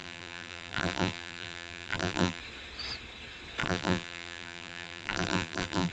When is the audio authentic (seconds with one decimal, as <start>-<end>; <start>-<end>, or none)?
2.4-3.6

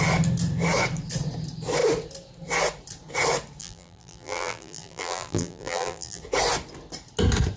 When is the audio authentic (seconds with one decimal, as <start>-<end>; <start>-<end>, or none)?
0.0-3.6; 6.2-7.6

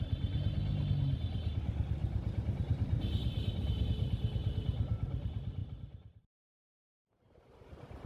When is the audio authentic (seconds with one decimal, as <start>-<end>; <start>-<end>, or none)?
0.0-2.0; 3.9-8.1

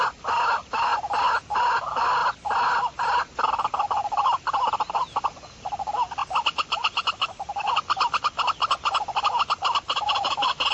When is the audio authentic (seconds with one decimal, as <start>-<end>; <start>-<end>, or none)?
0.0-10.7

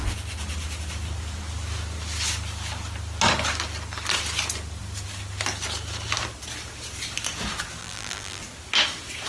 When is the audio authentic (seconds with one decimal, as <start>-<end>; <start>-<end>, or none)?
0.0-7.8; 8.4-9.3

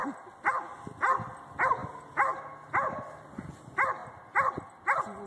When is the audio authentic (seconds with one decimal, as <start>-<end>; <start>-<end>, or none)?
0.0-5.3

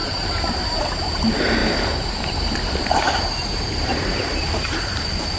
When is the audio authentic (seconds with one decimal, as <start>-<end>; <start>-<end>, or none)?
0.8-1.6; 4.8-5.4